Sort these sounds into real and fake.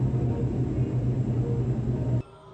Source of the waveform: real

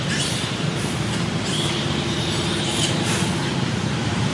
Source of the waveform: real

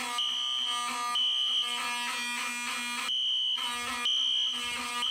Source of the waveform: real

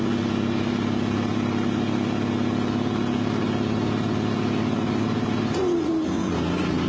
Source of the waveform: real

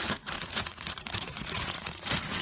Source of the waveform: fake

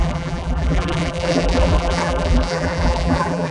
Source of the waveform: fake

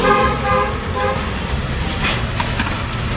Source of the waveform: real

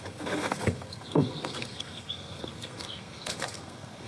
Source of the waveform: fake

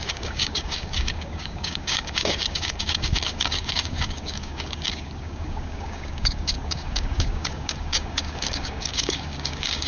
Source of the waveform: fake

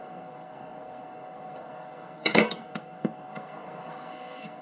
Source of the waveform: fake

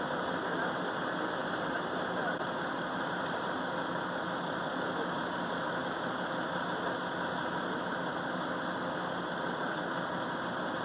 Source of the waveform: real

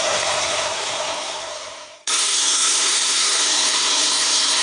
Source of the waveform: fake